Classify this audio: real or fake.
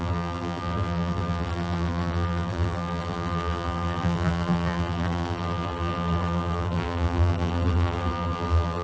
fake